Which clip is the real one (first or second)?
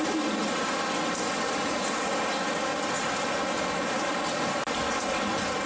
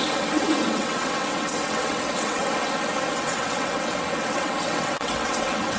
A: first